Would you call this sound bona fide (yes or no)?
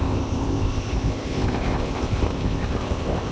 no